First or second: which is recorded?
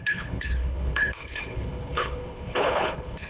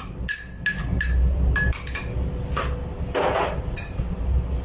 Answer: second